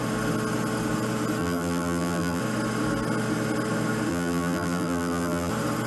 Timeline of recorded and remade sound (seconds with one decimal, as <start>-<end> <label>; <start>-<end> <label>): 0.0-1.4 recorded; 1.4-2.4 remade; 2.4-4.1 recorded; 4.1-5.5 remade; 5.5-5.9 recorded